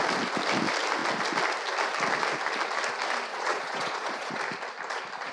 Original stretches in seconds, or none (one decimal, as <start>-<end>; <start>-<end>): 0.0-3.3; 4.4-5.3